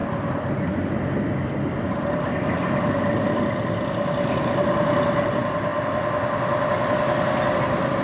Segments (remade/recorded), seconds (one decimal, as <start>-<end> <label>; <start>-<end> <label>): 0.0-8.0 recorded